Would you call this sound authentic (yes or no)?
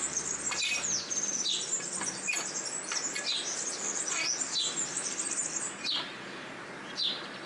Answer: yes